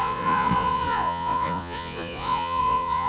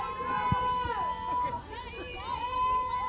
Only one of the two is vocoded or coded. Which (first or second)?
first